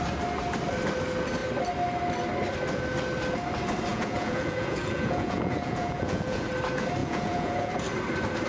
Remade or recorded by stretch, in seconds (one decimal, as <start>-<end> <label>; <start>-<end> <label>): 0.0-3.9 recorded; 3.9-6.5 remade; 6.5-7.0 recorded; 7.0-7.7 remade; 7.7-8.5 recorded